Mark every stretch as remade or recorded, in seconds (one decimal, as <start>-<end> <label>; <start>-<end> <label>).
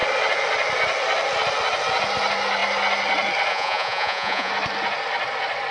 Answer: 0.0-3.5 recorded; 3.5-4.5 remade; 4.5-5.7 recorded